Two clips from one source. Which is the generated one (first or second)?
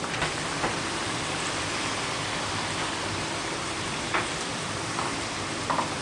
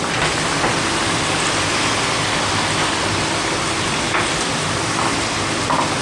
first